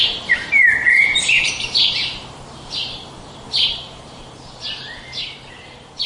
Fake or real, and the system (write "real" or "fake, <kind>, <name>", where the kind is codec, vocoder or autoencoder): fake, vocoder, BigVGAN v2